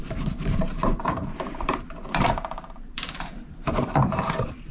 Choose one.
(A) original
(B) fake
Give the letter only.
B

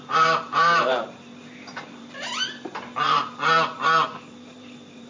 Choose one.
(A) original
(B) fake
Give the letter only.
B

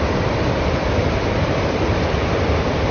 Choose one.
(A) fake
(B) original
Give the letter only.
A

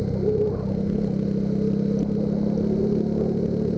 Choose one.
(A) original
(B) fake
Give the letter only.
A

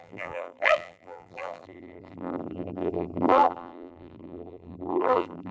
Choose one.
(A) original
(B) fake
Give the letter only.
B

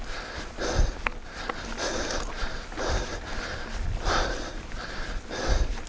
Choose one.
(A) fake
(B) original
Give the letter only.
A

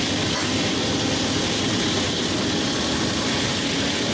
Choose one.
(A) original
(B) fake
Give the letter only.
A